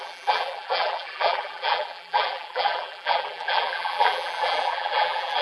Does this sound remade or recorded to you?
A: remade